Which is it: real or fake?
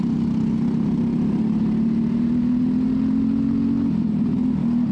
real